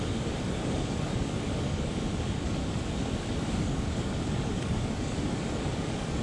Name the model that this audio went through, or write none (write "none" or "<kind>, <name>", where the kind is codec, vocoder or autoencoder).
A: codec, DAC